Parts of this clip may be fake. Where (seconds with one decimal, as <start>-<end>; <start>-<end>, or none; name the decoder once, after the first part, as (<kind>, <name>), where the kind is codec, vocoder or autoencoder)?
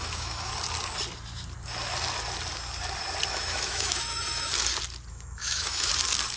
0.0-0.5 (autoencoder, DAC-VAE); 3.3-4.5; 5.1-5.9